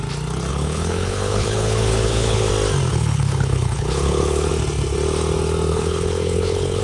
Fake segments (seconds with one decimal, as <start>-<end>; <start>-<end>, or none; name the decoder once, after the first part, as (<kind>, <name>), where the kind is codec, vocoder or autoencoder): 0.5-2.5 (codec, HILCodec); 2.9-4.5; 5.7-6.8